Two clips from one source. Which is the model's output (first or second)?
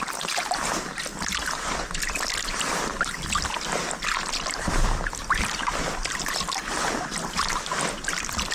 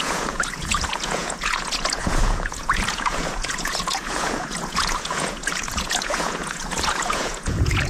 second